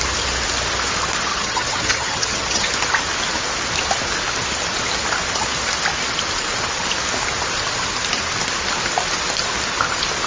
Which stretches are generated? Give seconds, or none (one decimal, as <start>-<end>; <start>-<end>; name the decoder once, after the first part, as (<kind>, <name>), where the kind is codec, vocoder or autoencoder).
1.3-2.7 (vocoder, HiFi-GAN)